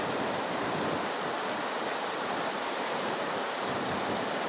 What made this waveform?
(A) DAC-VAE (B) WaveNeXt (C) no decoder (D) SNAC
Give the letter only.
C